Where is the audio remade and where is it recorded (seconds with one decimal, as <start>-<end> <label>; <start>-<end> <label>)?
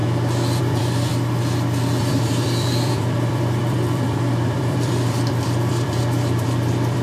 0.0-0.6 recorded; 0.6-1.1 remade; 1.1-2.0 recorded; 2.0-7.0 remade